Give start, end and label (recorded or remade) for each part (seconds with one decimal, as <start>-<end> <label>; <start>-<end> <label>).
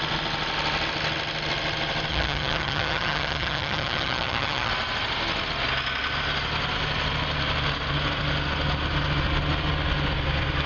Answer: 0.0-2.1 recorded; 2.1-4.7 remade; 4.7-10.7 recorded